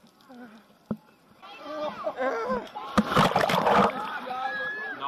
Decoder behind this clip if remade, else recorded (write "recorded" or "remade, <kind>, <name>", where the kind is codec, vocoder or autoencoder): recorded